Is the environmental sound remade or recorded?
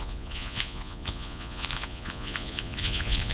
remade